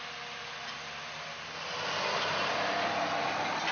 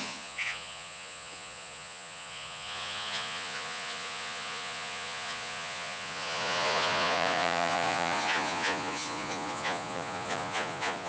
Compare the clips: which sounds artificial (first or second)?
second